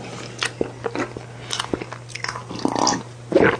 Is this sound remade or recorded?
recorded